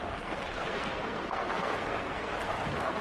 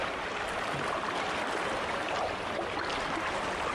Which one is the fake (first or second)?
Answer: first